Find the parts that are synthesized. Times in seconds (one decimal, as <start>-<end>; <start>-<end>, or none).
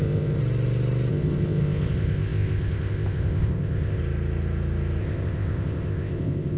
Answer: 0.0-0.4; 1.1-4.0; 5.0-6.6